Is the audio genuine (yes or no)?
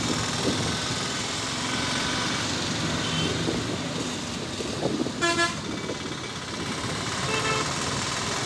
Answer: yes